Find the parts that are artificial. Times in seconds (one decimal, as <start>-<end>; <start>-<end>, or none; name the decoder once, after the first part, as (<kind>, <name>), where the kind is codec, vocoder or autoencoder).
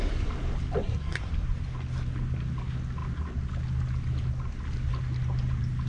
0.8-1.3 (codec, SNAC)